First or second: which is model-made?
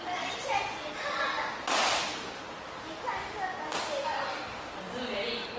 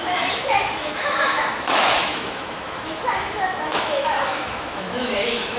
second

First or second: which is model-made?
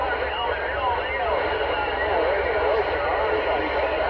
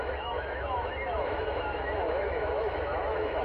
second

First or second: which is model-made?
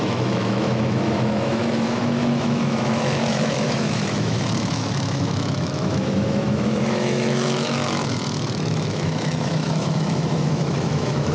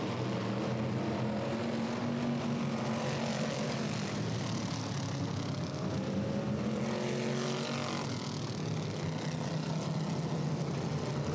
first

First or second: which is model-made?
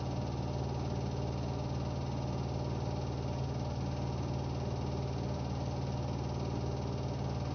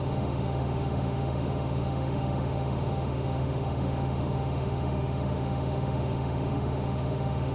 second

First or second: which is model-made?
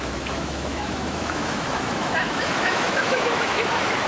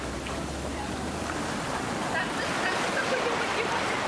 first